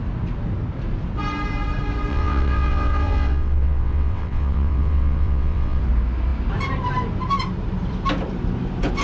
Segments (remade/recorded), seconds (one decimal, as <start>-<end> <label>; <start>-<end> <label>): 0.0-2.1 recorded; 2.1-5.8 remade; 5.8-9.0 recorded